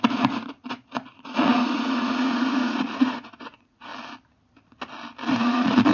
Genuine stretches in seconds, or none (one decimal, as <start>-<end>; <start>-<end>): 3.9-5.3